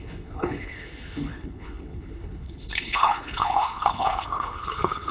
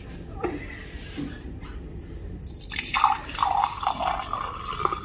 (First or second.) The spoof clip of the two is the first